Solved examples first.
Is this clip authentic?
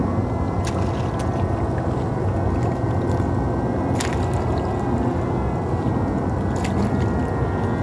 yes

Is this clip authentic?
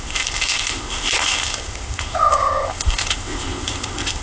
no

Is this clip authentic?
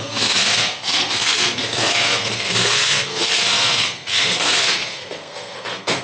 no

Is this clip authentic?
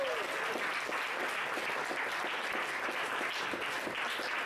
yes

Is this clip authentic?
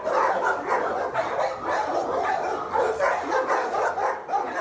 yes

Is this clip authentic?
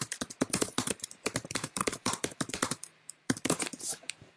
no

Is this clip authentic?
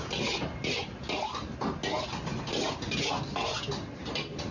yes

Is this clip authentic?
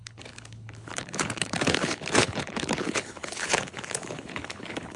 no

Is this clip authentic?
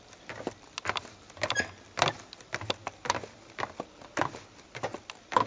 yes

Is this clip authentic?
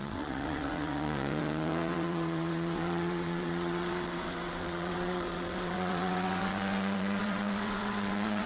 no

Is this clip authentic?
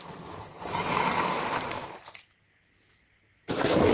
no